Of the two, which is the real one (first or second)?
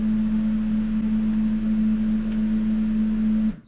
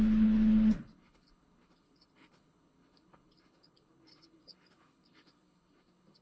first